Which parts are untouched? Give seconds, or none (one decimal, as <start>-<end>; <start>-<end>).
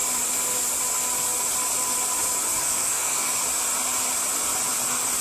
0.0-2.6; 3.3-5.2